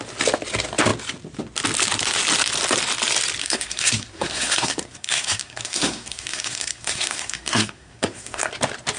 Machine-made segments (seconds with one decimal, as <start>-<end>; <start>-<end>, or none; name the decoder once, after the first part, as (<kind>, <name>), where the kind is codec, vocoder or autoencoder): 3.4-8.5 (codec, SNAC)